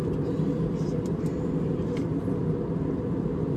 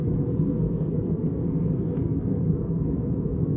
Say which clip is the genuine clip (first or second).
first